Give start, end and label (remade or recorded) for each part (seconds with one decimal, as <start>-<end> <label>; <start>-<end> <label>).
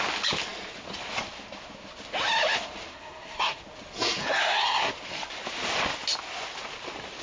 0.0-2.9 recorded; 2.9-3.6 remade; 3.6-4.2 recorded; 4.2-4.9 remade; 4.9-7.2 recorded